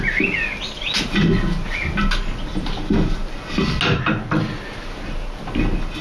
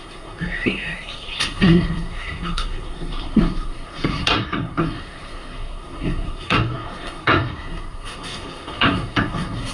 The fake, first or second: second